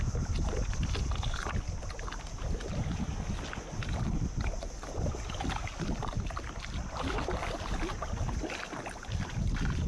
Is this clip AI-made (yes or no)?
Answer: no